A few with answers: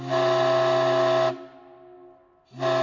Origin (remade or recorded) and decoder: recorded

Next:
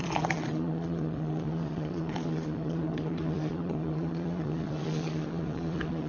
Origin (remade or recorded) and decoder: remade, vocoder, Vocos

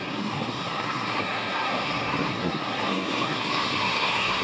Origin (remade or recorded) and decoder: remade, codec, SNAC